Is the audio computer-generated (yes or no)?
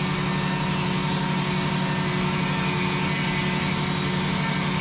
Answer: no